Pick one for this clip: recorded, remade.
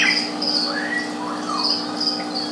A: recorded